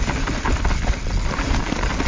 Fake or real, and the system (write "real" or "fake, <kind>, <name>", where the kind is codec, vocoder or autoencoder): real